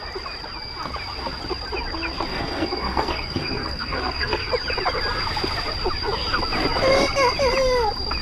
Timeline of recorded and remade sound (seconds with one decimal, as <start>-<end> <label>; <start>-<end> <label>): 0.0-2.3 recorded; 2.3-4.4 remade; 4.4-8.2 recorded